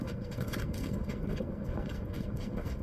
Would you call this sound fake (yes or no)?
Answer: yes